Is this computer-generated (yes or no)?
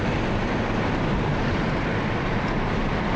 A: no